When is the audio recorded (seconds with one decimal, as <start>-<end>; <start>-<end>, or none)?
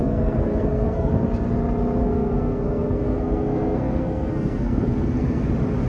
1.1-2.0; 5.5-5.9